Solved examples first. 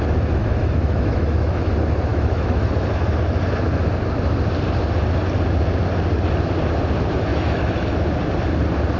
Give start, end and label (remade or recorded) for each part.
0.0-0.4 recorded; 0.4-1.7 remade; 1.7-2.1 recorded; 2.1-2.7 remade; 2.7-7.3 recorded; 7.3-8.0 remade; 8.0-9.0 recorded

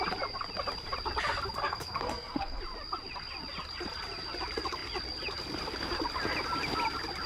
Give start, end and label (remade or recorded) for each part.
0.0-1.7 recorded; 1.7-2.6 remade; 2.6-7.3 recorded

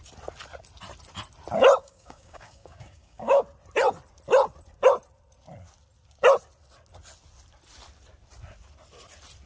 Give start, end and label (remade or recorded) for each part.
0.0-1.8 recorded; 1.8-3.4 remade; 3.4-9.5 recorded

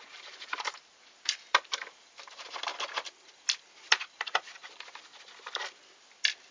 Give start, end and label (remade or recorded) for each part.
0.0-2.7 remade; 2.7-4.1 recorded; 4.1-5.1 remade; 5.1-6.5 recorded

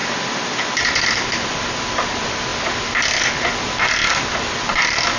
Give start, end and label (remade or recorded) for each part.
0.0-0.8 remade; 0.8-5.2 recorded